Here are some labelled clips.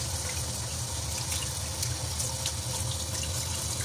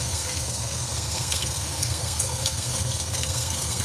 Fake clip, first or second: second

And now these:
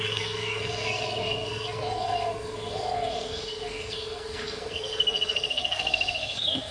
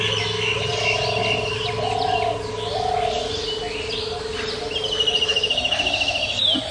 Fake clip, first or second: first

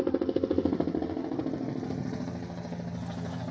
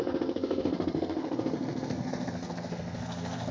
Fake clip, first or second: second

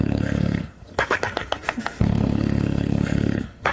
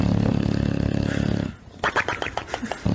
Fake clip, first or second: first